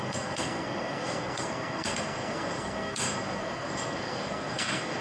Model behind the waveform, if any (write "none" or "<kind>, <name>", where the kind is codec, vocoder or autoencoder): codec, SNAC